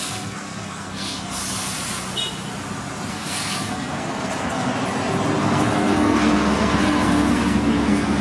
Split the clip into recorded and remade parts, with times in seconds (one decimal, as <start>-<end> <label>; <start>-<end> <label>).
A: 0.0-1.4 remade; 1.4-3.1 recorded; 3.1-4.7 remade; 4.7-5.4 recorded; 5.4-8.2 remade